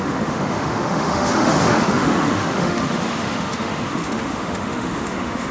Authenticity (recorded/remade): remade